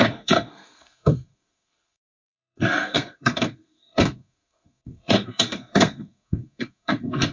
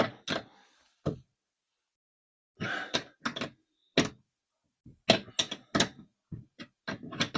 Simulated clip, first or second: first